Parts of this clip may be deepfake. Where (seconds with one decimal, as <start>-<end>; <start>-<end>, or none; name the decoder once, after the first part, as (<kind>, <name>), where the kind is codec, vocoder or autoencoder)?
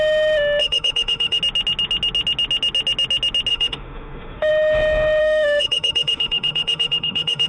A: 0.6-1.4 (autoencoder, DAC-VAE); 3.5-4.5; 5.2-7.5